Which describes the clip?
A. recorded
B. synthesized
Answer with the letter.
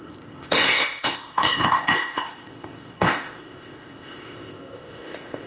B